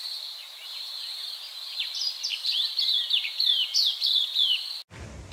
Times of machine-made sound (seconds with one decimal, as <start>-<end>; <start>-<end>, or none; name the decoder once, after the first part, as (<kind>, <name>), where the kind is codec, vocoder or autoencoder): 0.0-0.6 (vocoder, BigVGAN v2); 2.2-3.7